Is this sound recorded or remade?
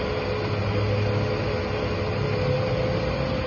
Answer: recorded